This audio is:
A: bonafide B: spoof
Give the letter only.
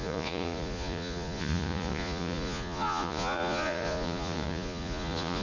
B